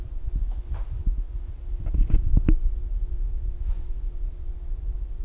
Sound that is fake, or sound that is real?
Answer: real